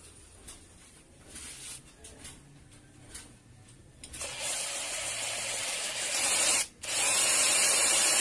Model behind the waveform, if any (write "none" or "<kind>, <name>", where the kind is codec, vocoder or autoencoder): none